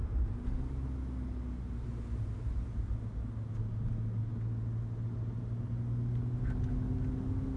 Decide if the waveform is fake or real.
real